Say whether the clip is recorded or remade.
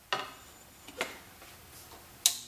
recorded